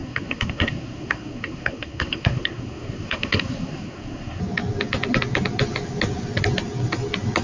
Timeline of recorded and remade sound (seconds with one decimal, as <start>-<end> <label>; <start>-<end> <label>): 0.0-4.4 remade; 4.4-7.4 recorded